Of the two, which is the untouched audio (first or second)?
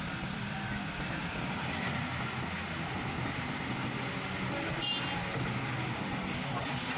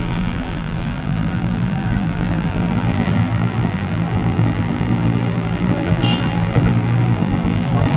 first